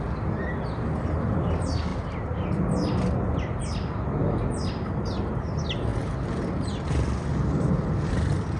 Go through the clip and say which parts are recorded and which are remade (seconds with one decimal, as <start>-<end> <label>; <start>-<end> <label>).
0.0-8.6 recorded